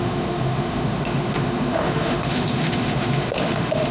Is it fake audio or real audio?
fake